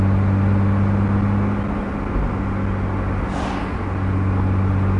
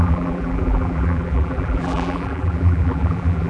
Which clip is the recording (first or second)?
first